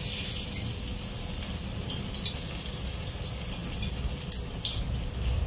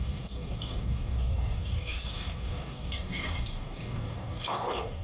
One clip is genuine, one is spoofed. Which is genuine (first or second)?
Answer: first